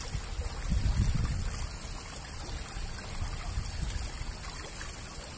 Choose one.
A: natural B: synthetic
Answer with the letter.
A